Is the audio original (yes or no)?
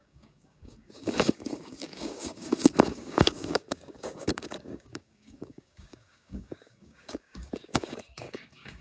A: no